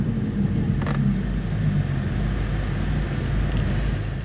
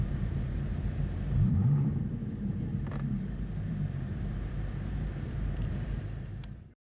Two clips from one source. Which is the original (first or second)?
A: first